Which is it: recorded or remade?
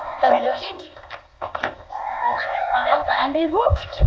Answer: remade